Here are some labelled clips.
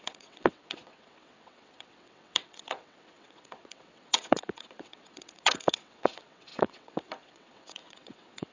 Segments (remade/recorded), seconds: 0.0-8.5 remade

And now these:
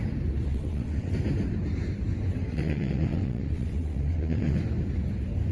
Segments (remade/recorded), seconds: 0.0-0.5 recorded; 0.5-1.1 remade; 1.1-2.5 recorded; 2.5-4.6 remade; 4.6-5.5 recorded

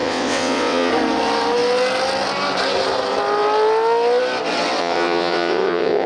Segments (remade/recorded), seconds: 0.0-0.9 remade; 0.9-4.8 recorded; 4.8-6.1 remade